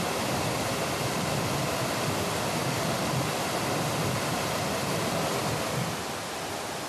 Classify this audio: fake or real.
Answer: real